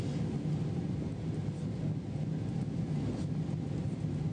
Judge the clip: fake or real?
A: real